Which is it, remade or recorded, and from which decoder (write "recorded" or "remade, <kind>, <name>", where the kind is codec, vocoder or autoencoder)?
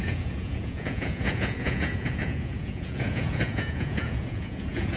remade, vocoder, Vocos